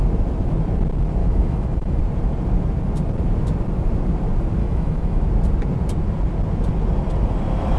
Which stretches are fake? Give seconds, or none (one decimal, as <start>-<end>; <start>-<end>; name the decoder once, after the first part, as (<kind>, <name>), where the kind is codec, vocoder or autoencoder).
1.2-2.0 (autoencoder, DAC-VAE); 4.6-5.2

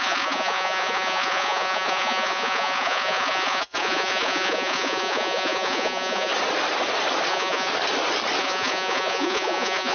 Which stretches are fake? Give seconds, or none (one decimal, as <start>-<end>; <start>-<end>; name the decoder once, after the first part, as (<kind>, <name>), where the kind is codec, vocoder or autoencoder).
0.0-6.3 (vocoder, Vocos); 7.3-7.7; 8.4-9.9